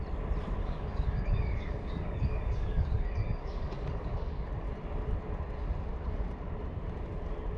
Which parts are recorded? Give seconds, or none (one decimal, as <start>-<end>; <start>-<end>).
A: 0.0-0.6; 4.5-7.6